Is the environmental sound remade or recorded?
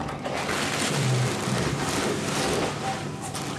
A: remade